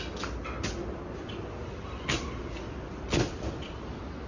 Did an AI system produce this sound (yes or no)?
no